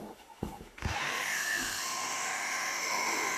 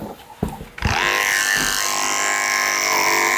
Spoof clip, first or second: first